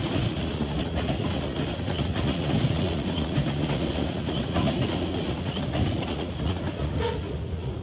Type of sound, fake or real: fake